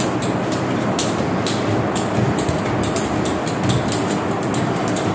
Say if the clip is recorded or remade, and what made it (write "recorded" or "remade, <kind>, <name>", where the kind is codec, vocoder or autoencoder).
recorded